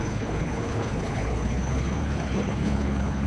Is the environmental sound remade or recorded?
remade